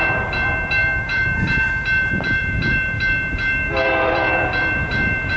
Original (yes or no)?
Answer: no